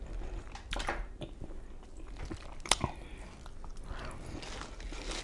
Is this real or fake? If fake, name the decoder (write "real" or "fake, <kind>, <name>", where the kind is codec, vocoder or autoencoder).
real